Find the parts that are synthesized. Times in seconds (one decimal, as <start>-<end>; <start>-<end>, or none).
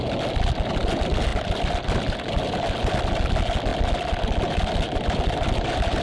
1.3-2.9